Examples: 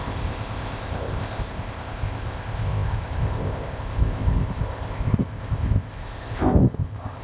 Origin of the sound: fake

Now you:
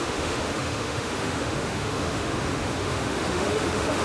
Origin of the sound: fake